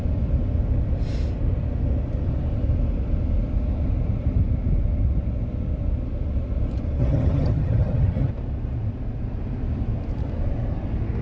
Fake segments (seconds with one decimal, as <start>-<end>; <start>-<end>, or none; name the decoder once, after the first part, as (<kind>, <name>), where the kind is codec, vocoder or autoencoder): 7.0-8.3 (vocoder, HiFi-GAN)